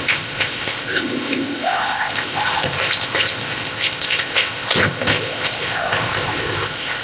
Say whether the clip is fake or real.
fake